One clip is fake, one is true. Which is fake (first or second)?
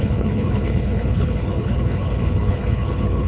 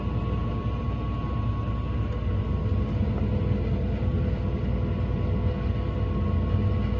first